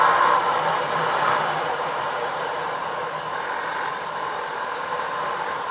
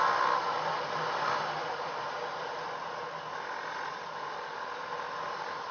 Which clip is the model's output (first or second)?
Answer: first